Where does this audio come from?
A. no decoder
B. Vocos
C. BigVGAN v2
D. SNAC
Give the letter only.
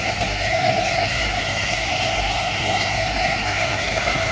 D